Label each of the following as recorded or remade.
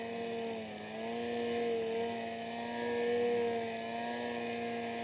recorded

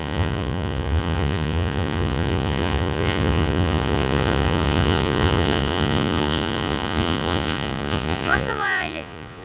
remade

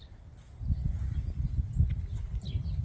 recorded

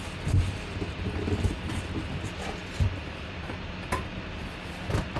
recorded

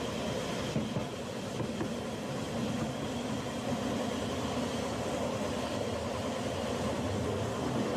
recorded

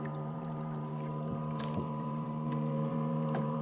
remade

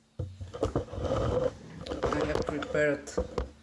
recorded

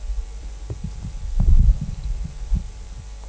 remade